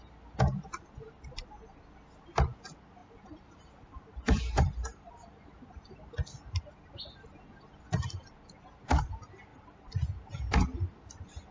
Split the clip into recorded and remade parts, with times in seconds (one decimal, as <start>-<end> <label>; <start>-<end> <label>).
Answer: 0.0-3.0 recorded; 3.0-5.9 remade; 5.9-11.5 recorded

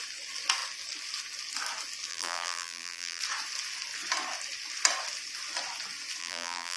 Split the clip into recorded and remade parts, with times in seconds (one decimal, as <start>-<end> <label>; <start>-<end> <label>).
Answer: 0.0-2.1 recorded; 2.1-3.2 remade; 3.2-6.2 recorded; 6.2-6.8 remade

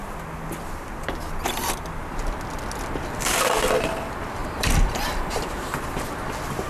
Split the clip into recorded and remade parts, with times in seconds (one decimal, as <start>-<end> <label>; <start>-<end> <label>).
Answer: 0.0-4.4 recorded; 4.4-6.3 remade; 6.3-6.7 recorded

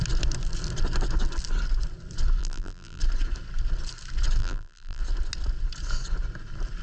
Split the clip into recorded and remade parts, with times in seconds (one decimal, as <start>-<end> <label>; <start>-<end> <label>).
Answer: 0.0-2.4 recorded; 2.4-3.0 remade; 3.0-4.4 recorded; 4.4-5.0 remade; 5.0-6.8 recorded

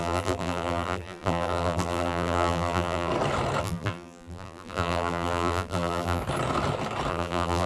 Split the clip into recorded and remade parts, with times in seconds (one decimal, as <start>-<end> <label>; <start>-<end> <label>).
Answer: 0.0-3.1 remade; 3.1-3.6 recorded; 3.6-6.2 remade; 6.2-7.1 recorded; 7.1-7.7 remade